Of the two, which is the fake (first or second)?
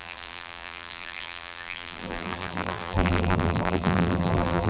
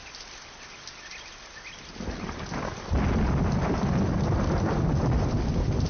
first